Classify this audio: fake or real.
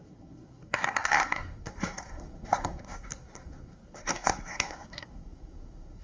fake